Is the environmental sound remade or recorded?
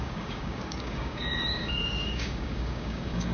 remade